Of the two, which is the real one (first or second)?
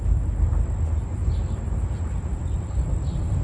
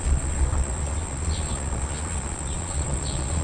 first